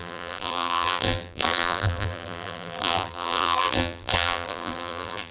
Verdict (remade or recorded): remade